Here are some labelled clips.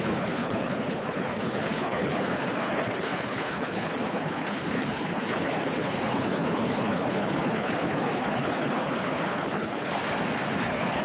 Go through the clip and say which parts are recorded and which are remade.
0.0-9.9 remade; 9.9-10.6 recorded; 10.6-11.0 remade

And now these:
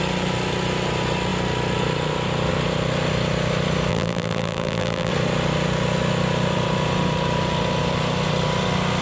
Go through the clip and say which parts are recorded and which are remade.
0.0-3.9 recorded; 3.9-5.1 remade; 5.1-9.0 recorded

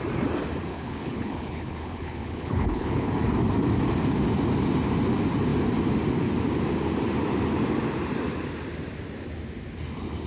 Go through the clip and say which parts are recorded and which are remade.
0.0-0.7 recorded; 0.7-3.1 remade; 3.1-10.3 recorded

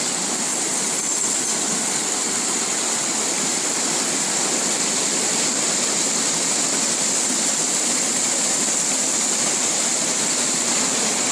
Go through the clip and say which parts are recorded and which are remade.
0.0-11.3 recorded

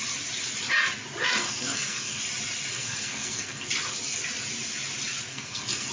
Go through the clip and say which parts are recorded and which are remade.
0.0-1.2 recorded; 1.2-2.2 remade; 2.2-2.7 recorded; 2.7-3.7 remade; 3.7-5.3 recorded; 5.3-5.9 remade

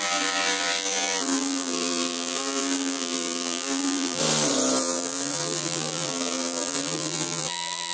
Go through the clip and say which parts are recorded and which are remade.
0.0-4.2 remade; 4.2-4.8 recorded; 4.8-7.9 remade

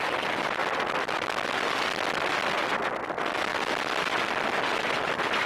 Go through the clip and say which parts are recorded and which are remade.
0.0-5.5 recorded

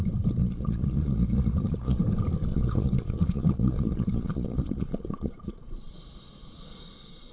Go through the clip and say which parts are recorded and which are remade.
0.0-0.4 recorded; 0.4-2.0 remade; 2.0-2.5 recorded; 2.5-7.3 remade